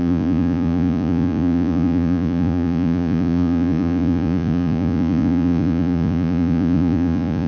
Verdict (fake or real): fake